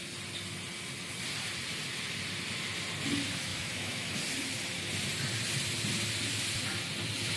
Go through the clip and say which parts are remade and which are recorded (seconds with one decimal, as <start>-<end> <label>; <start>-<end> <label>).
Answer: 0.0-3.5 recorded; 3.5-4.2 remade; 4.2-7.4 recorded